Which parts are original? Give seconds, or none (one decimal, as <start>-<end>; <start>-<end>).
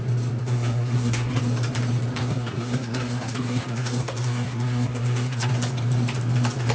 0.0-0.4; 1.4-2.2; 5.5-6.7